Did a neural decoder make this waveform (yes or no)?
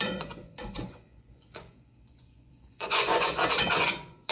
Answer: yes